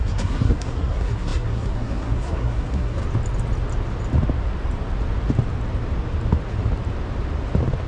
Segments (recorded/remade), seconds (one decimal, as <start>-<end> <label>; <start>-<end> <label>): 0.0-3.0 remade; 3.0-7.9 recorded